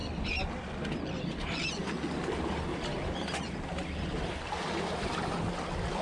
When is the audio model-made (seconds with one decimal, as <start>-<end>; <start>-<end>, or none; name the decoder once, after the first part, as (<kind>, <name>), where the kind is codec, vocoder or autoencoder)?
none